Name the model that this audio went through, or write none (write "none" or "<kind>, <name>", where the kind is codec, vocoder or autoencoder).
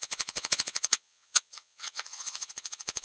vocoder, WaveNeXt